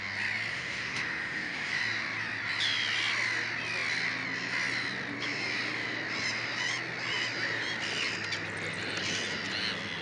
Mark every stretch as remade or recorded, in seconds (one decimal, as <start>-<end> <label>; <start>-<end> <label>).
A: 0.0-0.5 recorded; 0.5-1.8 remade; 1.8-10.0 recorded